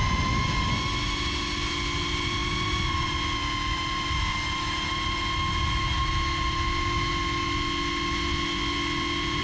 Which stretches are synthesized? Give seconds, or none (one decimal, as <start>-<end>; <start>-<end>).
none